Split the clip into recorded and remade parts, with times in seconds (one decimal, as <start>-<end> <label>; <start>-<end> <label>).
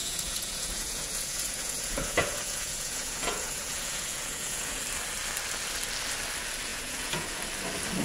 0.0-4.8 remade; 4.8-6.7 recorded; 6.7-7.4 remade; 7.4-8.0 recorded